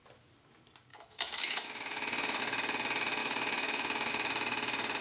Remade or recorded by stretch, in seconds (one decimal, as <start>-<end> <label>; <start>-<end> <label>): 0.0-0.9 recorded; 0.9-2.4 remade; 2.4-3.2 recorded; 3.2-4.1 remade; 4.1-5.0 recorded